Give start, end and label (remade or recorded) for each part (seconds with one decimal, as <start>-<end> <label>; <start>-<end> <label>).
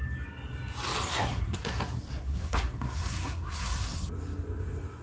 0.0-1.1 recorded; 1.1-4.1 remade; 4.1-5.0 recorded